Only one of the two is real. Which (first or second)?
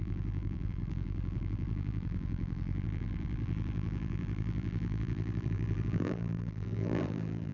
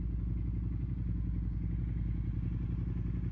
second